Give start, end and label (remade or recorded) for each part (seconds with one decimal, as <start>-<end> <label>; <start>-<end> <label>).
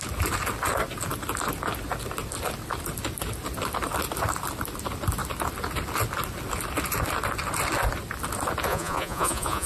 0.0-8.7 recorded; 8.7-9.7 remade